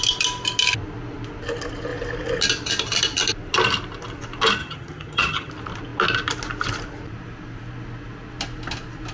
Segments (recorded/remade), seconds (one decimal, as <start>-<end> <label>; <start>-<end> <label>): 0.0-4.6 recorded; 4.6-5.5 remade; 5.5-9.1 recorded